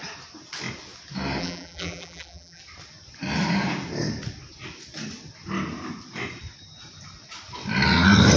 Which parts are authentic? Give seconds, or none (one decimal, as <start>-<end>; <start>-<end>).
0.0-1.4; 2.6-8.4